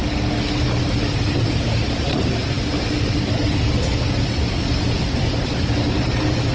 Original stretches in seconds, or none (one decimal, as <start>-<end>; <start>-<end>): 0.0-6.5